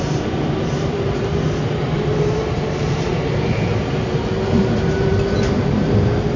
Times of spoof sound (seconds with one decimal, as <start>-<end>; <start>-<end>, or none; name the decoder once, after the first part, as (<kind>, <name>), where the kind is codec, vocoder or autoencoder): 0.0-6.4 (vocoder, BigVGAN v2)